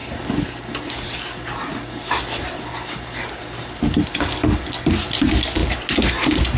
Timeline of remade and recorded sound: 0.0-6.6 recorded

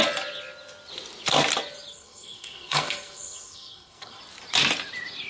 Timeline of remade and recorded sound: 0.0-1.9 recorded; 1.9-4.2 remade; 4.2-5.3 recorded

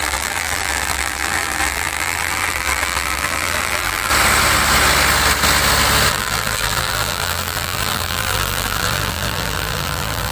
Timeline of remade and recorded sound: 0.0-4.1 remade; 4.1-6.1 recorded; 6.1-10.3 remade